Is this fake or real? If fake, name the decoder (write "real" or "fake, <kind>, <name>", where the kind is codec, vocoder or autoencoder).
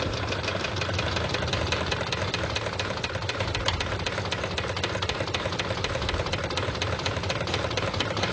real